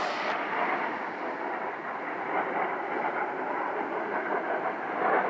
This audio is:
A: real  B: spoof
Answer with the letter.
B